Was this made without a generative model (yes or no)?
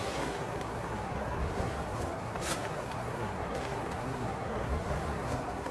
no